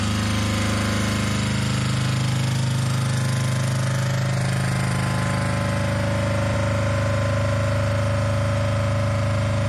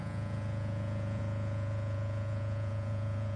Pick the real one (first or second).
first